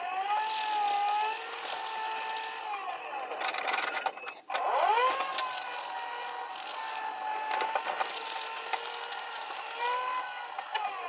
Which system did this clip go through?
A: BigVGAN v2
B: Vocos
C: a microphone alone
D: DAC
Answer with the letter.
C